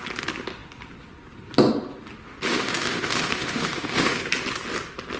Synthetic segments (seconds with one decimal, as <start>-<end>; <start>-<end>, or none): 2.5-4.2